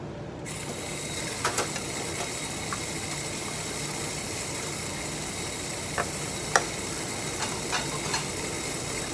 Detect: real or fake real